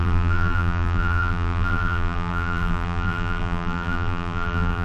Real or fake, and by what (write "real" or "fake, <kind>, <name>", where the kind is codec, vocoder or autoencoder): fake, vocoder, BigVGAN v2